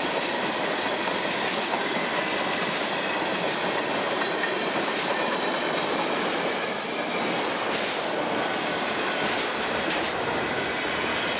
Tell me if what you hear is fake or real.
fake